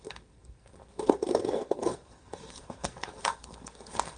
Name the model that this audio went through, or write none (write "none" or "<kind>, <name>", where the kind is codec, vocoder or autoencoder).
codec, SNAC